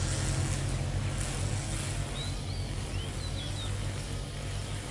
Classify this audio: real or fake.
real